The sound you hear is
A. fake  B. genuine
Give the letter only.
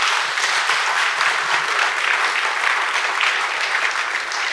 B